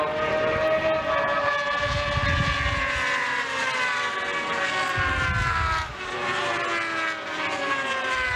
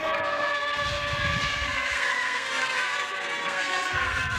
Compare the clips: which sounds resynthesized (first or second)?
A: second